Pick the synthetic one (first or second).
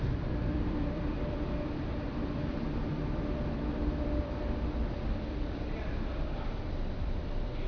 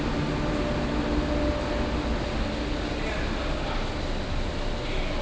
first